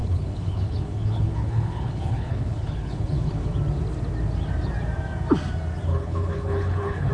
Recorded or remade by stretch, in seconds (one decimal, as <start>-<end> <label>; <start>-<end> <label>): 0.0-3.5 remade; 3.5-5.9 recorded; 5.9-7.1 remade